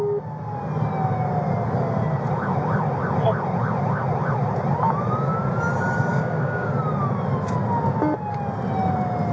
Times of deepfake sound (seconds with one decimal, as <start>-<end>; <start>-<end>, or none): 6.1-6.7